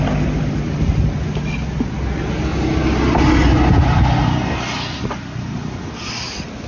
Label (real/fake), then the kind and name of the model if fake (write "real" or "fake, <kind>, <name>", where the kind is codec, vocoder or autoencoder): real